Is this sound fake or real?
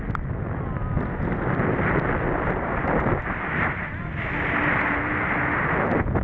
real